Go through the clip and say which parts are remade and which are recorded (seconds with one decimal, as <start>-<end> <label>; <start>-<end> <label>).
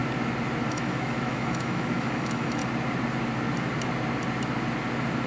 0.0-0.7 recorded; 0.7-2.6 remade; 2.6-5.3 recorded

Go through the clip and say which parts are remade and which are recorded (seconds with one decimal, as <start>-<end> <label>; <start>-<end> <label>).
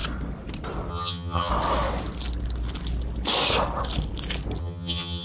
0.0-0.9 recorded; 0.9-1.5 remade; 1.5-4.6 recorded; 4.6-5.2 remade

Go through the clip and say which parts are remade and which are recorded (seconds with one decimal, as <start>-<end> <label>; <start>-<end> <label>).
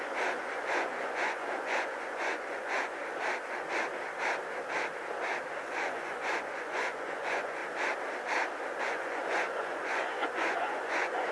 0.0-3.0 remade; 3.0-5.6 recorded; 5.6-7.6 remade; 7.6-8.8 recorded; 8.8-11.3 remade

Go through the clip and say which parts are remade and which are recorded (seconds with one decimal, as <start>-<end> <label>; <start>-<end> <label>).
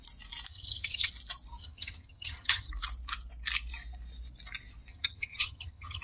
0.0-0.5 recorded; 0.5-1.1 remade; 1.1-1.6 recorded; 1.6-2.7 remade; 2.7-4.9 recorded; 4.9-6.0 remade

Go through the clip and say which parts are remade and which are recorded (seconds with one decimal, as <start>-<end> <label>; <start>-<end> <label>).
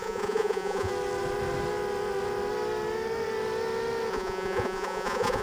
0.0-0.9 remade; 0.9-4.1 recorded; 4.1-5.4 remade